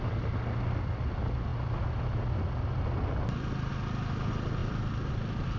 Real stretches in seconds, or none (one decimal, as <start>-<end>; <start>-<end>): 0.0-5.6